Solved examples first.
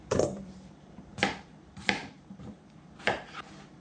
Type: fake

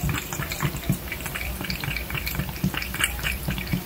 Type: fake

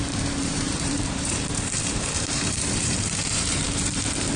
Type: fake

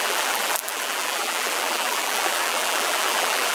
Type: fake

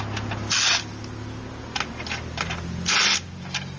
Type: real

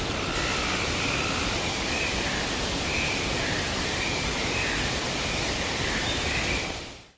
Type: fake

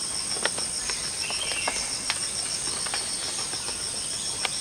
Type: real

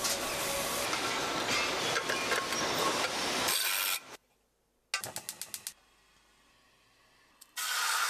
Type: real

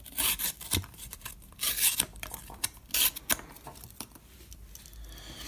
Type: real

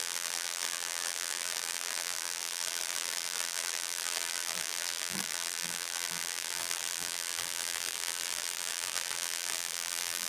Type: fake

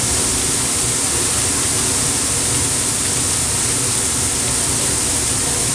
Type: fake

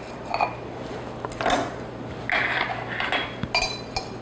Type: real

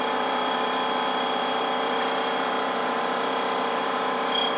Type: fake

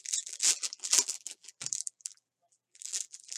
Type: fake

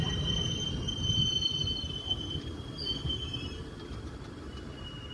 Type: fake